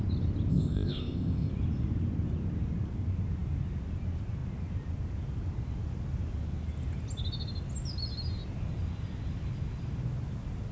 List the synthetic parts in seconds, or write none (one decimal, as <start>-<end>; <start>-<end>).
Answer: 0.5-1.5